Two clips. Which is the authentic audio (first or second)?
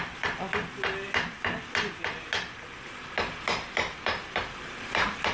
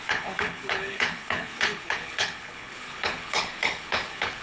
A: first